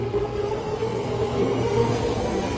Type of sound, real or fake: fake